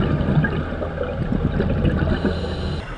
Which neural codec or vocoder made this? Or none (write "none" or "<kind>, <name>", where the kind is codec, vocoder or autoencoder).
none